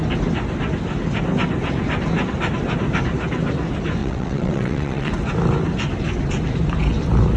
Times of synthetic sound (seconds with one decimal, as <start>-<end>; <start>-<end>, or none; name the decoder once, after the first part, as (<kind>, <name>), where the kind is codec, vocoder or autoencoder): 4.0-5.1 (vocoder, WaveNeXt)